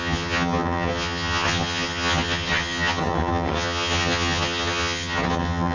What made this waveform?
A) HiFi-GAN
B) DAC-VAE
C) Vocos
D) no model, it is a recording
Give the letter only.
A